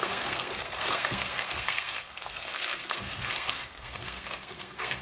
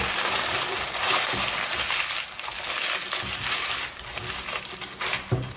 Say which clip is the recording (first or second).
second